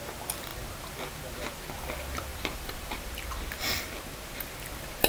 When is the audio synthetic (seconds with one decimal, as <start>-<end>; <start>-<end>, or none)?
2.3-3.0